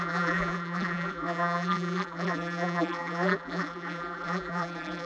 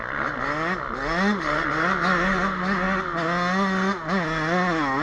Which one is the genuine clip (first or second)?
second